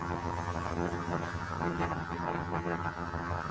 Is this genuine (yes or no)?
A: no